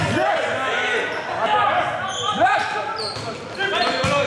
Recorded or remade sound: recorded